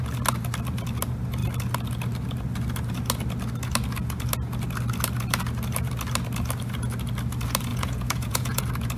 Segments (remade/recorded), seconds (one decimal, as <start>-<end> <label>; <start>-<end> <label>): 0.0-7.7 recorded; 7.7-8.6 remade; 8.6-9.0 recorded